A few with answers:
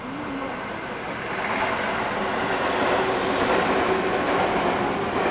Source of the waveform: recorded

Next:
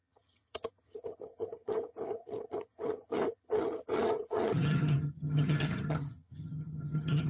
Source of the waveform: remade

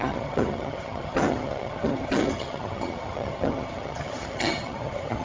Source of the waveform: remade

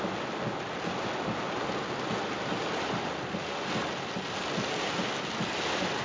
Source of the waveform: recorded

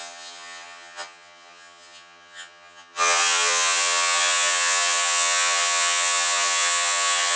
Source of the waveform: remade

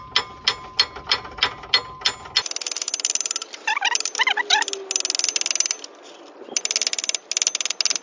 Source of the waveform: recorded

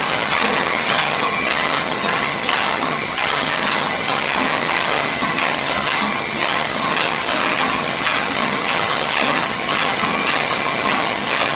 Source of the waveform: remade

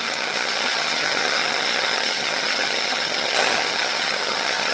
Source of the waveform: remade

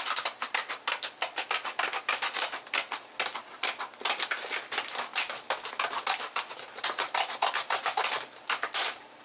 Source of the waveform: recorded